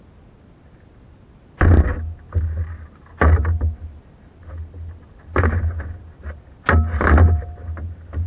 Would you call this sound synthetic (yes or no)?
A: no